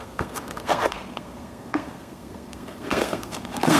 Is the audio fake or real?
fake